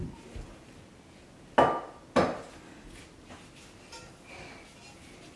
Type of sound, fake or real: real